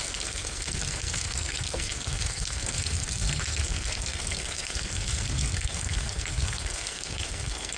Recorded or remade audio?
remade